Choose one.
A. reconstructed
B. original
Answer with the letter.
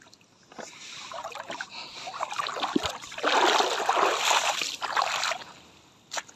B